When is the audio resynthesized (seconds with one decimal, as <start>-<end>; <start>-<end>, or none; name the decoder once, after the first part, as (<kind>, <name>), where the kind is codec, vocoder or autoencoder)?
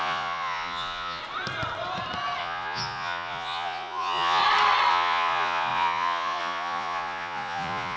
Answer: 0.0-1.2 (vocoder, Vocos); 2.4-4.4; 4.9-8.0